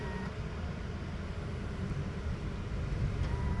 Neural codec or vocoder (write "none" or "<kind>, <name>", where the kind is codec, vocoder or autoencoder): none